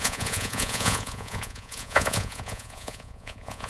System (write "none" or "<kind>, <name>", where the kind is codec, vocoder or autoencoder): vocoder, Vocos